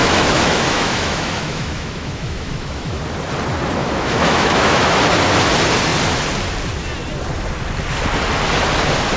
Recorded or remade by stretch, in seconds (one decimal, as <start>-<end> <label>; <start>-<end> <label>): 0.0-3.0 remade; 3.0-3.8 recorded; 3.8-5.0 remade; 5.0-9.2 recorded